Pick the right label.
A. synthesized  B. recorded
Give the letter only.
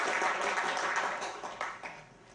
B